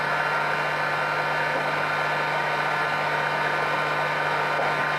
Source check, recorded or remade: recorded